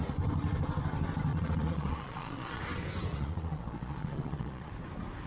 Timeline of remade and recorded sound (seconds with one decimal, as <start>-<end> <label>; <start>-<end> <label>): 0.0-1.3 recorded; 1.3-2.6 remade; 2.6-3.1 recorded; 3.1-4.7 remade; 4.7-5.3 recorded

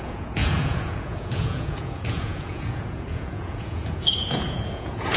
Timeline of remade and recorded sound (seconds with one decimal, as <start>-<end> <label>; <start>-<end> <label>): 0.0-5.2 remade

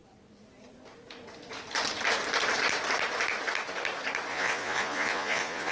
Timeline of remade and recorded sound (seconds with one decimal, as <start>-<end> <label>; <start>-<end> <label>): 0.0-4.3 recorded; 4.3-5.7 remade

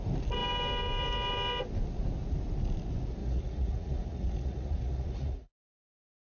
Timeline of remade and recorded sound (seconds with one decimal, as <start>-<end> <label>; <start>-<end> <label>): 0.0-3.2 recorded; 3.2-5.7 remade; 5.7-6.3 recorded

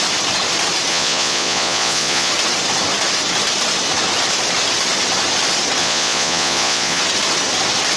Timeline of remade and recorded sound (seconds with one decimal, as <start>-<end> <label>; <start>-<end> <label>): 0.0-0.9 recorded; 0.9-2.3 remade; 2.3-5.8 recorded; 5.8-7.0 remade; 7.0-8.0 recorded

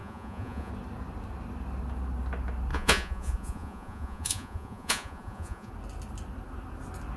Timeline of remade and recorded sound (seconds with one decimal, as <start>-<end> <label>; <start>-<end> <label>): 0.0-0.7 remade; 0.7-2.7 recorded; 2.7-5.7 remade; 5.7-7.2 recorded

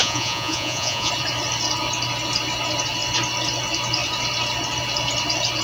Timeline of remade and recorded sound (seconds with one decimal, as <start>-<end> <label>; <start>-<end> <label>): 0.0-1.1 remade; 1.1-5.6 recorded